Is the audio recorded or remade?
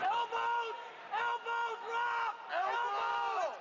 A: recorded